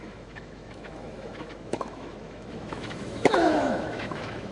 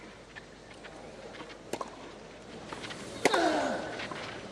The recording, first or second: second